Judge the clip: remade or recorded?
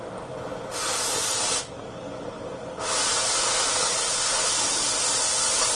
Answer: recorded